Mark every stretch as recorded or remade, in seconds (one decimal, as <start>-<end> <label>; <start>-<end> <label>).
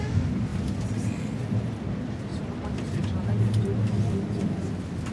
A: 0.0-5.1 recorded